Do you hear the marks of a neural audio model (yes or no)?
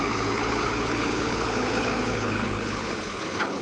yes